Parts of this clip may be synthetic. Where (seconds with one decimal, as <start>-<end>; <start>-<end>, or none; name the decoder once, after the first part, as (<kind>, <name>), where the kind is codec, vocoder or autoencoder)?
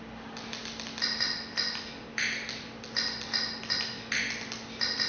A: none